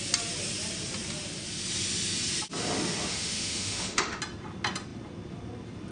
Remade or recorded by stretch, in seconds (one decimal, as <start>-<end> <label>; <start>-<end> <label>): 0.0-3.1 recorded; 3.1-4.2 remade; 4.2-5.9 recorded